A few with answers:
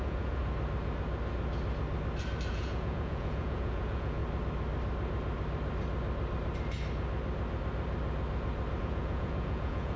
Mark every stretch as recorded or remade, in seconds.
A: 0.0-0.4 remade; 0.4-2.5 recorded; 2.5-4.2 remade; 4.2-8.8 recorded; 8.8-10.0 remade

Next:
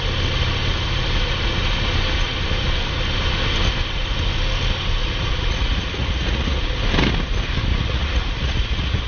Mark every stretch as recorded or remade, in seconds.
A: 0.0-5.0 recorded; 5.0-6.6 remade; 6.6-7.7 recorded; 7.7-9.1 remade

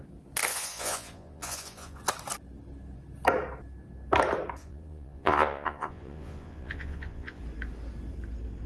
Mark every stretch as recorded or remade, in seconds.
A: 0.0-0.5 recorded; 0.5-2.0 remade; 2.0-4.6 recorded; 4.6-7.4 remade; 7.4-8.7 recorded

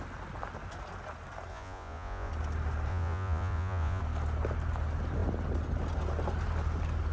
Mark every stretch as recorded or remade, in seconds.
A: 0.0-1.5 recorded; 1.5-2.3 remade; 2.3-2.9 recorded; 2.9-4.0 remade; 4.0-7.1 recorded